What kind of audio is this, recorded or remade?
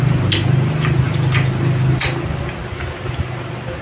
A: recorded